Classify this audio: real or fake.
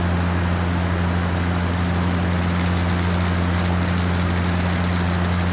real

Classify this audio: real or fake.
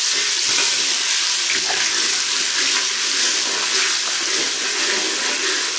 real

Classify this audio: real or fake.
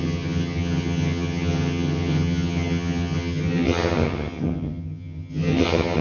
fake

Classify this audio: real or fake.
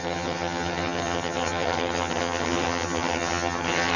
fake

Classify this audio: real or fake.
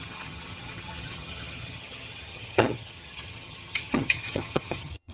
fake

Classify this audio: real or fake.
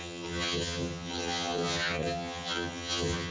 fake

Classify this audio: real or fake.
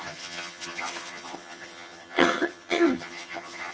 fake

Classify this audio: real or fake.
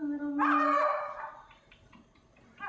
real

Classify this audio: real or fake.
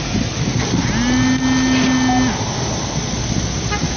real